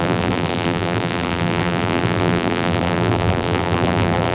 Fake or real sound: fake